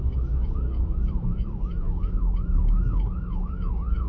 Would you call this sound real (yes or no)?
no